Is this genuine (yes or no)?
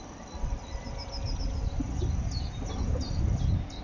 yes